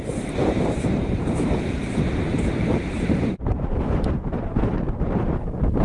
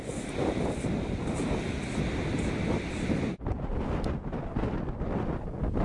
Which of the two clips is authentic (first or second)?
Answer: second